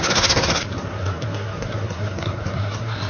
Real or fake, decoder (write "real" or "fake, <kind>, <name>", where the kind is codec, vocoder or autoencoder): fake, codec, SNAC